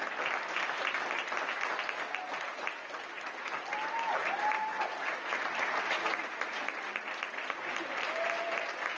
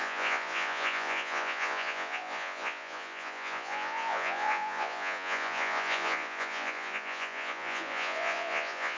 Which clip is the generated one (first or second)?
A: second